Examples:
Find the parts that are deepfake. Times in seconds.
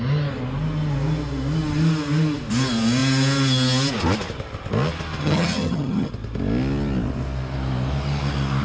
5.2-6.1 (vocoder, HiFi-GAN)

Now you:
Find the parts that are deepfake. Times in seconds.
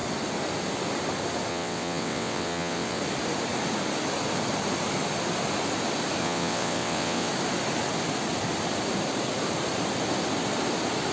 1.5-3.0 (vocoder, WaveNeXt); 6.2-7.3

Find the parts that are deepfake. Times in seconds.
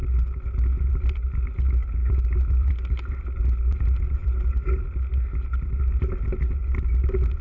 2.0-2.7 (vocoder, BigVGAN v2); 4.2-5.1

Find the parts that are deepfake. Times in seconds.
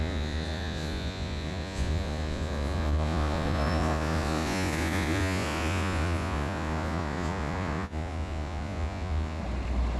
0.0-9.4 (vocoder, Vocos)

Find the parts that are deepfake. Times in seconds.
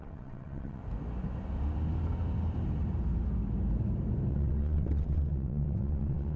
0.0-0.8 (vocoder, WaveNeXt); 4.3-6.4